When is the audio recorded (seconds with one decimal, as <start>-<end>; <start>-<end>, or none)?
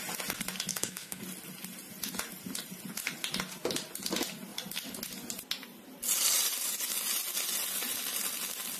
0.0-0.7; 1.2-8.8